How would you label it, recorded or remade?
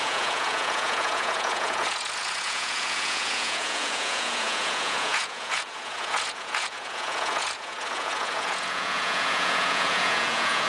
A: remade